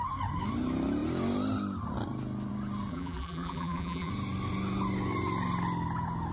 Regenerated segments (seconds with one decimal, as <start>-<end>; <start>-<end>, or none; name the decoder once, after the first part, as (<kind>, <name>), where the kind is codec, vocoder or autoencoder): 2.9-4.1 (vocoder, BigVGAN v2)